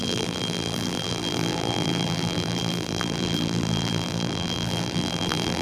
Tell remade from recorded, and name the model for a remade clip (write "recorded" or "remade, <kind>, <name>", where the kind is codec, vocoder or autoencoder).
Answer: remade, vocoder, BigVGAN v2